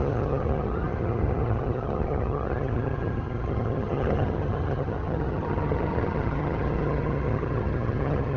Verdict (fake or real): fake